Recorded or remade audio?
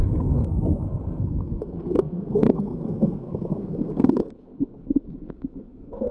remade